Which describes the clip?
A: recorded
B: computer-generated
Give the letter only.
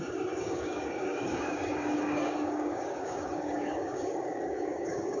B